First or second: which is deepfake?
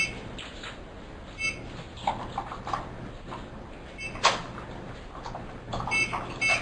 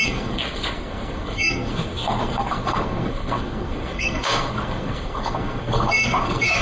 second